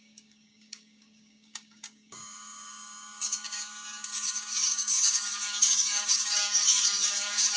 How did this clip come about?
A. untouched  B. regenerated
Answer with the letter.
B